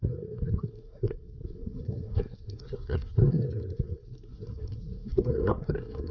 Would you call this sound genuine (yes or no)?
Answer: no